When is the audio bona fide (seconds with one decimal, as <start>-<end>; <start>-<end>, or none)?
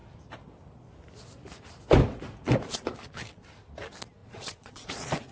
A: 0.0-4.2